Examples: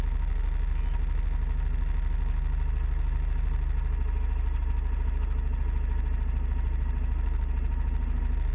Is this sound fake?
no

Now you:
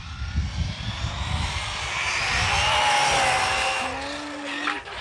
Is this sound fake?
no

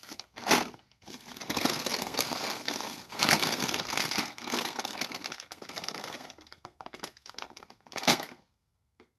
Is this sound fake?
yes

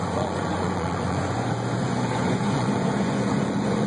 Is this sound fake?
yes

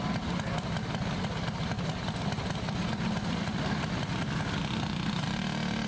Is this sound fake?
no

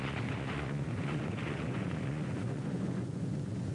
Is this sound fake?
yes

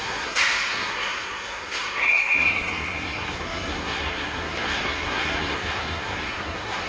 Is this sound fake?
yes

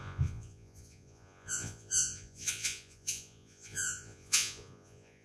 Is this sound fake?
yes